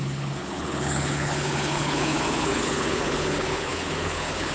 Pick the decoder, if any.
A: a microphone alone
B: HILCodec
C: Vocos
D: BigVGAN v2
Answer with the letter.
B